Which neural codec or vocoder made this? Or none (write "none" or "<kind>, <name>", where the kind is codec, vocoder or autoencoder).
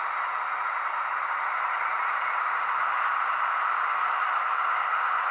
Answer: none